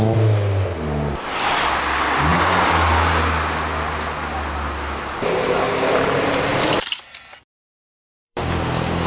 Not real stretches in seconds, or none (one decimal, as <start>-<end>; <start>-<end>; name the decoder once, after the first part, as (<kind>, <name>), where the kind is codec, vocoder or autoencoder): 6.5-8.4 (vocoder, BigVGAN v2)